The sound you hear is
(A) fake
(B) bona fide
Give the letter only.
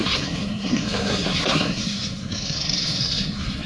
A